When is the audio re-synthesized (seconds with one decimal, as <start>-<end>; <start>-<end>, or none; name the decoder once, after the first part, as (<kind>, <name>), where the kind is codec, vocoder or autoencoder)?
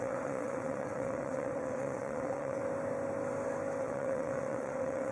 0.0-2.6 (vocoder, WaveNeXt); 3.8-5.1